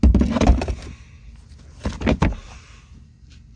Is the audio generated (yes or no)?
no